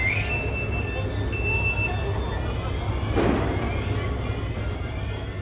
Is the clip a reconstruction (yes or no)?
no